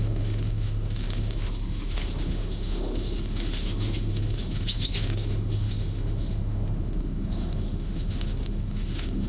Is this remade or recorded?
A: remade